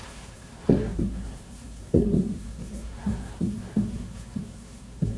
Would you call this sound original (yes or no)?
no